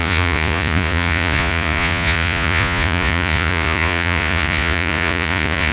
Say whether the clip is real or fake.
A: fake